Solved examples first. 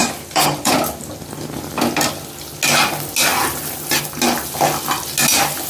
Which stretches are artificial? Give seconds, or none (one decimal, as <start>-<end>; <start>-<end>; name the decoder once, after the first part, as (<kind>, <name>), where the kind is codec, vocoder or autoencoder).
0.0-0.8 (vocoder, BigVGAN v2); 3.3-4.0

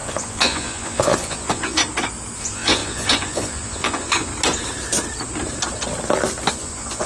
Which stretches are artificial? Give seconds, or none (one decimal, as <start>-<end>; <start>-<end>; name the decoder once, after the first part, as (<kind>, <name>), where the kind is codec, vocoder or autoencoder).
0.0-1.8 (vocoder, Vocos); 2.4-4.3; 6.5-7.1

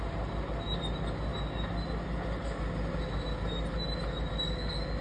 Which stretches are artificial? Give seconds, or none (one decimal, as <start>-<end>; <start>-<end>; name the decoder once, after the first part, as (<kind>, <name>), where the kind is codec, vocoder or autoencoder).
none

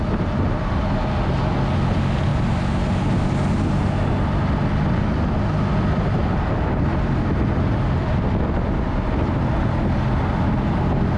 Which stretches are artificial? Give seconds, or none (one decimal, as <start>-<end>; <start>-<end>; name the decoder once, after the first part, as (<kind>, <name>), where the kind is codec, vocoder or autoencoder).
none

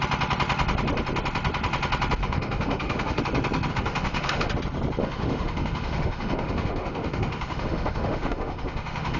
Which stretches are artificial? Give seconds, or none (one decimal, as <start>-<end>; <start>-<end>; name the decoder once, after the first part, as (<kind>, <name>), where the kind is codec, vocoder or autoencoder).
2.2-3.2 (autoencoder, DAC-VAE); 3.7-4.5; 5.0-9.2